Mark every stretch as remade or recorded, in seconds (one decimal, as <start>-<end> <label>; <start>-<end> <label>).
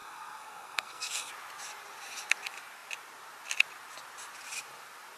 0.0-1.3 remade; 1.3-5.2 recorded